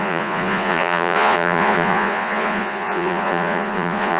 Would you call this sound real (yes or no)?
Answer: no